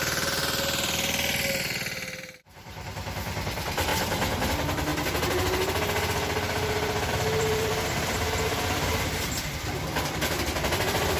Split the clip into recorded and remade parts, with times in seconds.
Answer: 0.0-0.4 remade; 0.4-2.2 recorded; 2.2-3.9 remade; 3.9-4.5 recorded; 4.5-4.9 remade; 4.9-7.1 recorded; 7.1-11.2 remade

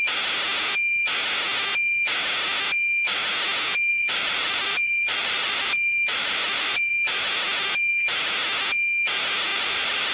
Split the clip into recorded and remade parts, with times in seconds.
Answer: 0.0-3.9 recorded; 3.9-6.9 remade; 6.9-9.5 recorded; 9.5-10.1 remade

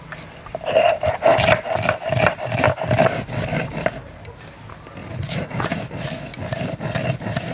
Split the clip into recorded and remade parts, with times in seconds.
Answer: 0.0-5.0 recorded; 5.0-5.6 remade; 5.6-7.5 recorded

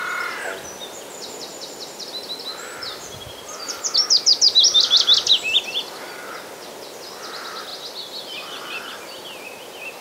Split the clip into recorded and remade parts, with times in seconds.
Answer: 0.0-1.5 recorded; 1.5-2.1 remade; 2.1-2.5 recorded; 2.5-4.0 remade; 4.0-4.7 recorded; 4.7-6.1 remade; 6.1-7.7 recorded; 7.7-8.2 remade; 8.2-10.0 recorded

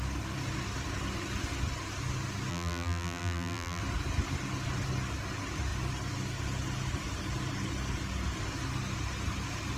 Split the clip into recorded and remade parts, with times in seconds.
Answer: 0.0-2.5 recorded; 2.5-3.8 remade; 3.8-9.8 recorded

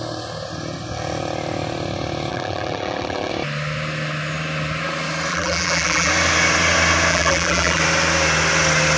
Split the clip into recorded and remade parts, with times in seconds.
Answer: 0.0-2.3 recorded; 2.3-3.3 remade; 3.3-5.3 recorded; 5.3-6.1 remade; 6.1-7.1 recorded; 7.1-7.8 remade; 7.8-9.0 recorded